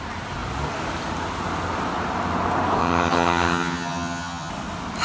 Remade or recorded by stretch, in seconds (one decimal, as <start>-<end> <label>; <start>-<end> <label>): 0.0-2.8 recorded; 2.8-4.5 remade; 4.5-5.0 recorded